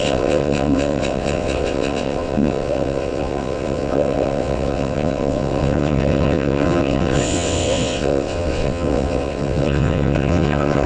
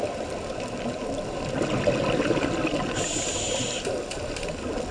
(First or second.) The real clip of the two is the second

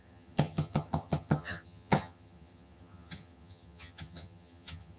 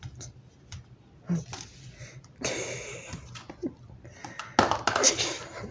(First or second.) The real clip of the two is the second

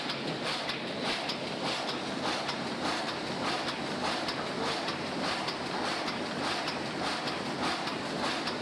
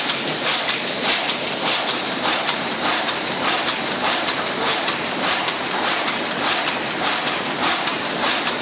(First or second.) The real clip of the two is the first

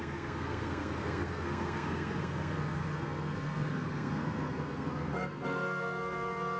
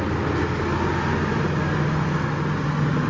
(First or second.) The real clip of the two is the second